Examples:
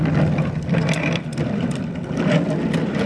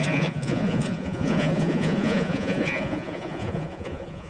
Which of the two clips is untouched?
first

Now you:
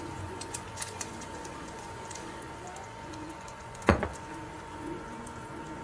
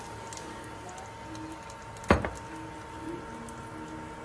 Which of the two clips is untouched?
second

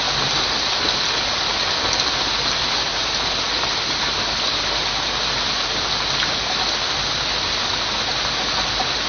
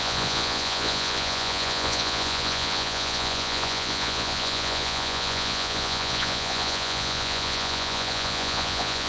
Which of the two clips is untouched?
first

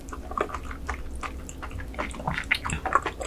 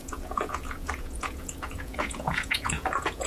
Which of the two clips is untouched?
first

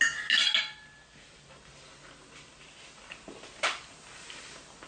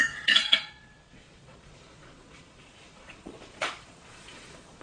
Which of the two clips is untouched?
first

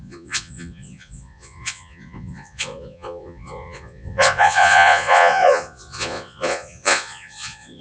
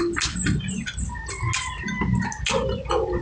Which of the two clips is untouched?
second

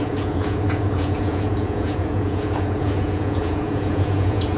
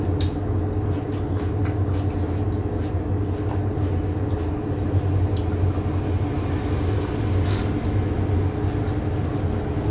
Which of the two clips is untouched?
second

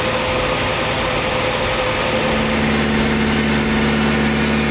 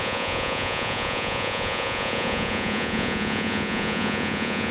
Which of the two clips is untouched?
first